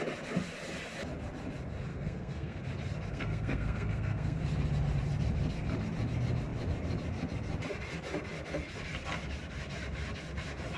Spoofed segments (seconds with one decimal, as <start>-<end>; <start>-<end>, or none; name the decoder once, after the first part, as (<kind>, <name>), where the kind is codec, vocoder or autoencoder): 1.9-2.6 (codec, SNAC); 3.1-4.4